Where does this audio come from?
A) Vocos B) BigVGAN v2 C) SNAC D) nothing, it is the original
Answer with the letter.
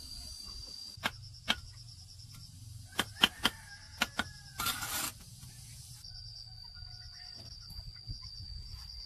D